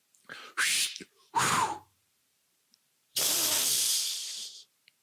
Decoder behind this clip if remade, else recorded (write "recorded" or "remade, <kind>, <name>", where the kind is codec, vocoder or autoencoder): remade, vocoder, BigVGAN v2